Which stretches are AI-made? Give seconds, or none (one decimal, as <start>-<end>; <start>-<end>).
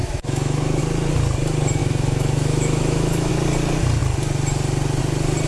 0.0-0.8; 1.8-3.3